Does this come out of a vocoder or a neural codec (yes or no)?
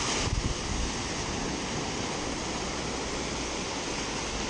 no